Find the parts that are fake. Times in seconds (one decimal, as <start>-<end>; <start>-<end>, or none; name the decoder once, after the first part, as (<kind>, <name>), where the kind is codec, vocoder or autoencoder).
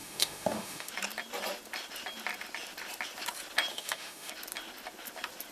0.0-0.9 (autoencoder, DAC-VAE); 3.7-4.3